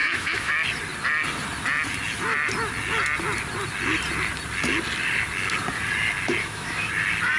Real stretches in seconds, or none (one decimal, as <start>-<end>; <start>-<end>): 0.5-6.4; 6.9-7.4